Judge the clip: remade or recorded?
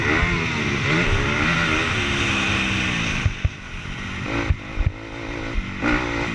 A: recorded